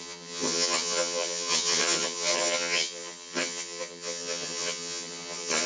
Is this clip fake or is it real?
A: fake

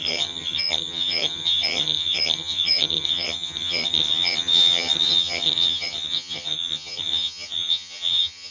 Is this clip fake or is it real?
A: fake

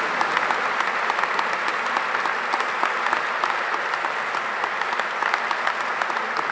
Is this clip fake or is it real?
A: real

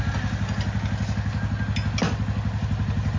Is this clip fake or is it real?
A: real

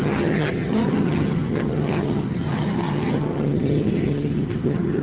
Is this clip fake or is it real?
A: fake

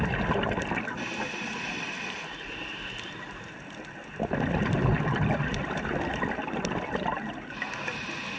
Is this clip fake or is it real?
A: real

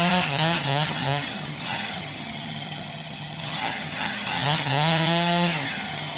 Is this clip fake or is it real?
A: fake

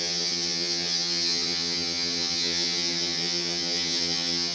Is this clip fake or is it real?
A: fake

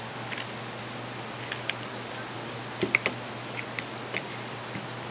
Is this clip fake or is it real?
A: real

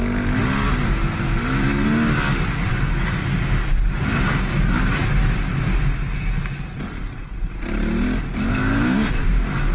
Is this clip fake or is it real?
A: real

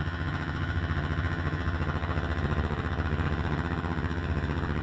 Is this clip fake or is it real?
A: fake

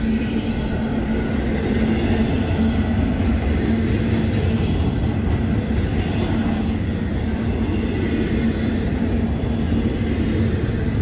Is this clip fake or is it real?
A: real